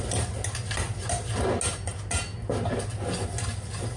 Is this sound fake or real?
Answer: real